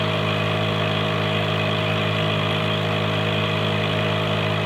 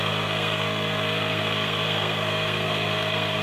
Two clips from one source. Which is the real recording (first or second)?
first